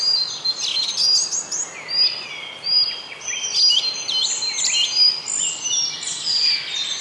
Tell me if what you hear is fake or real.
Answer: real